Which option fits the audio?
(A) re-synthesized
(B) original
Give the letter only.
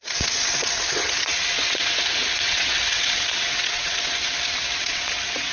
A